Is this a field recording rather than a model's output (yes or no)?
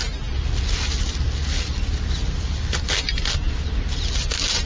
yes